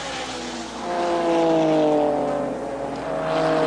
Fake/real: real